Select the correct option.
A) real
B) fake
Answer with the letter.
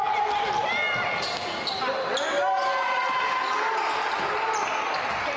A